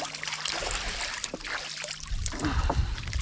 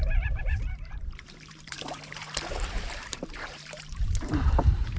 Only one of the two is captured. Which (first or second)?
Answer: first